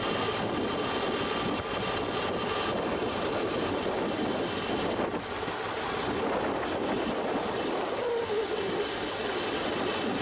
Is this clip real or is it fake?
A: real